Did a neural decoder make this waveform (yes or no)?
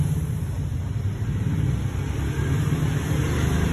no